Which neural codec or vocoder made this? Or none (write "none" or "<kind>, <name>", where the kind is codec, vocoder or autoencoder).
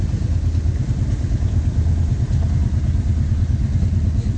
none